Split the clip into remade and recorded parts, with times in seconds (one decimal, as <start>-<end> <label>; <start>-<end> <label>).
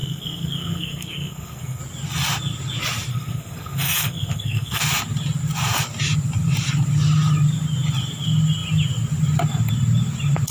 0.0-1.8 remade; 1.8-3.1 recorded; 3.1-4.8 remade; 4.8-10.5 recorded